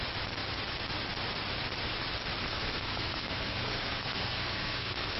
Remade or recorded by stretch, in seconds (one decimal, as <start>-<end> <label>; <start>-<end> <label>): 0.0-2.4 recorded; 2.4-5.2 remade